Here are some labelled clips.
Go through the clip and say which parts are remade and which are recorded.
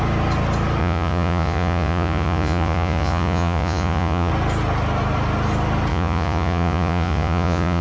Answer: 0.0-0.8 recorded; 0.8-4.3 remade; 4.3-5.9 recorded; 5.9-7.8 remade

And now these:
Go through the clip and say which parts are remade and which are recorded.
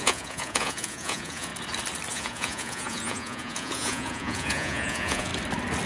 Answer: 0.0-1.5 remade; 1.5-2.1 recorded; 2.1-5.3 remade; 5.3-5.9 recorded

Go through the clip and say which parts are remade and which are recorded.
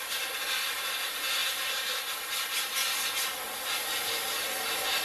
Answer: 0.0-5.0 recorded